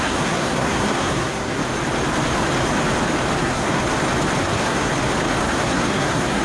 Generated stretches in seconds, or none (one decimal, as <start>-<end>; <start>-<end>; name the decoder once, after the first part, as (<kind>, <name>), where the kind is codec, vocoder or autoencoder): 0.0-1.6 (codec, SNAC); 3.4-3.8; 4.4-4.9; 5.4-6.4